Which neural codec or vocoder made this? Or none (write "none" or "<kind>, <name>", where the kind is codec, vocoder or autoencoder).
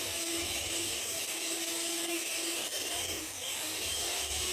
codec, DAC